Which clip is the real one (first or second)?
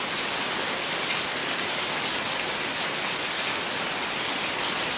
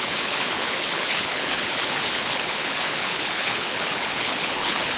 first